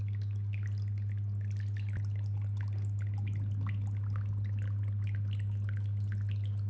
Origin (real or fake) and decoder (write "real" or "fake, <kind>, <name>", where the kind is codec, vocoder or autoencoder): real